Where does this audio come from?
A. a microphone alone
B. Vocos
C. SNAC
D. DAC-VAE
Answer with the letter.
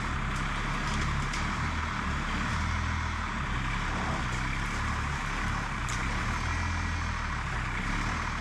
A